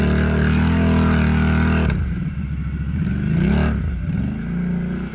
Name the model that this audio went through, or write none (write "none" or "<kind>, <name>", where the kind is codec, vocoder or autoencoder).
none